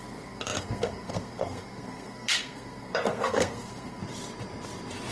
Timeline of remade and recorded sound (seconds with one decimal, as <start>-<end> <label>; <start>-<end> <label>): 0.0-4.0 remade; 4.0-5.1 recorded